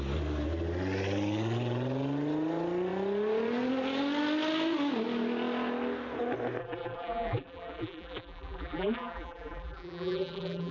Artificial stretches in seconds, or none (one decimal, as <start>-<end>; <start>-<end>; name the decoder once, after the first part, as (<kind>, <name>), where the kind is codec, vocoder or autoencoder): 6.6-10.7 (vocoder, BigVGAN v2)